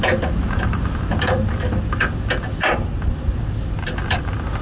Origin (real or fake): real